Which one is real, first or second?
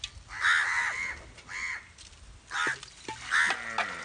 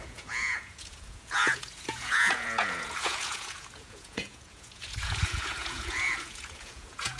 first